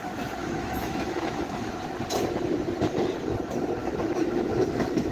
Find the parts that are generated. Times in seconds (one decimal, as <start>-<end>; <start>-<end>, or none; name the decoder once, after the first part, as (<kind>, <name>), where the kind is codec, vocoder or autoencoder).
0.4-1.7 (autoencoder, DAC-VAE); 3.8-5.1